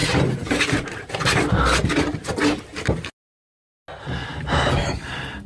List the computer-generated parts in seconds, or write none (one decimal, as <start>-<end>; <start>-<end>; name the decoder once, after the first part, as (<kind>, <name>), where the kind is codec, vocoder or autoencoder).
0.0-1.1 (vocoder, BigVGAN v2); 4.2-4.7